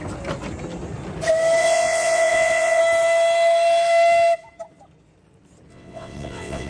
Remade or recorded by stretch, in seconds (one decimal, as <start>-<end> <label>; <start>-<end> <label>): 0.0-1.6 recorded; 1.6-2.8 remade; 2.8-5.7 recorded; 5.7-6.7 remade